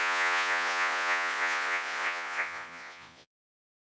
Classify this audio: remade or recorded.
remade